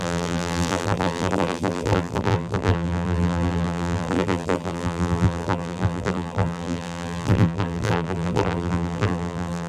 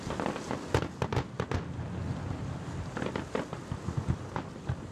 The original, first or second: second